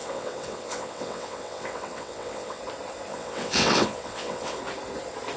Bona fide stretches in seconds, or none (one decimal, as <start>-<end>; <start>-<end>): 2.6-3.1; 4.6-5.4